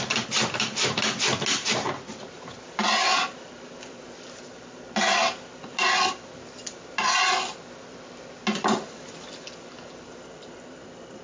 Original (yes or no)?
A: yes